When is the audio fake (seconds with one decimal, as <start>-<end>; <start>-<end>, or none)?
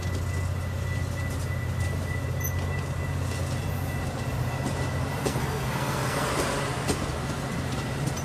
5.2-6.3